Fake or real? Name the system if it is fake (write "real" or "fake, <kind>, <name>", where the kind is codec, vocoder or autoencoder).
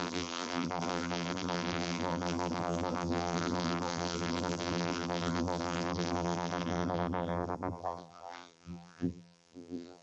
fake, vocoder, BigVGAN v2